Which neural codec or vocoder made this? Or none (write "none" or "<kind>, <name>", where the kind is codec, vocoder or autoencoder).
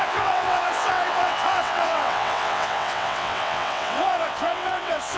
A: vocoder, WaveNeXt